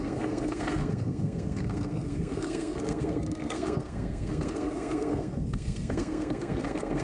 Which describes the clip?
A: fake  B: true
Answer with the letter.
A